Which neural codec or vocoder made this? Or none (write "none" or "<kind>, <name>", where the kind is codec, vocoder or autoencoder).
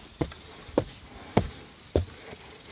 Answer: none